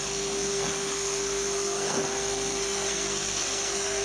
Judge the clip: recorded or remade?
remade